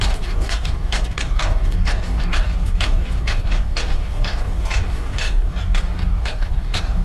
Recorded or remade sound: remade